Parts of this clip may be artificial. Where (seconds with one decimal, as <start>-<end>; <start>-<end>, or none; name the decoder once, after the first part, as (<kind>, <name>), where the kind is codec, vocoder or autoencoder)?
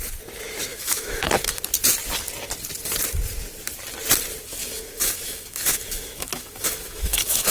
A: 0.7-1.6 (autoencoder, DAC-VAE); 4.6-7.5